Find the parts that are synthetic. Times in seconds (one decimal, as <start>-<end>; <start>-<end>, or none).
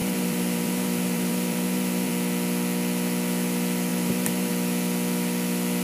0.0-2.1; 3.9-4.5